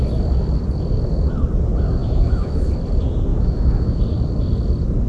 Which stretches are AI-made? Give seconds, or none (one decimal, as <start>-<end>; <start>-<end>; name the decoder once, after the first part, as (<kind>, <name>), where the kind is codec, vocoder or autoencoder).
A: 2.0-2.7 (autoencoder, DAC-VAE); 3.3-4.0